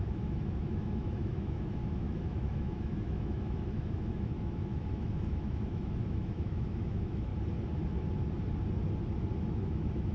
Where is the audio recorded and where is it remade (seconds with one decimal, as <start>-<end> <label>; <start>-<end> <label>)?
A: 0.0-7.3 remade; 7.3-9.4 recorded; 9.4-10.1 remade